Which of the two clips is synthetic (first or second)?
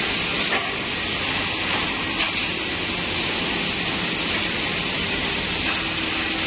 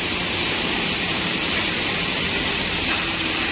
second